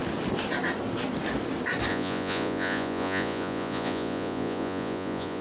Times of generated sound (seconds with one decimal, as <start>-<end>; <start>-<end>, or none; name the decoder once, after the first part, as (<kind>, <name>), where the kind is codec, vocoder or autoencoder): 1.9-5.4 (vocoder, Vocos)